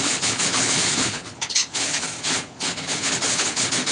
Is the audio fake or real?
fake